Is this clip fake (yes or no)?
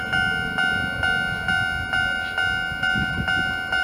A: no